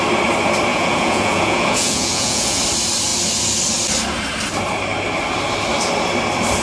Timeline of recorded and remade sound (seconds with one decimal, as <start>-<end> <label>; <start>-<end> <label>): 0.0-0.7 recorded; 0.7-2.6 remade; 2.6-6.6 recorded